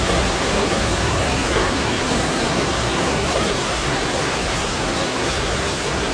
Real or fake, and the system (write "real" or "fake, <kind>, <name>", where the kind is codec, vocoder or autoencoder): fake, codec, SNAC